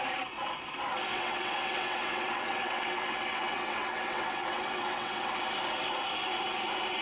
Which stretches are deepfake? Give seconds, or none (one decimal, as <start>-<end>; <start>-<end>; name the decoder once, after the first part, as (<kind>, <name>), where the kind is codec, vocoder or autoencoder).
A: 1.1-5.3 (vocoder, WaveNeXt)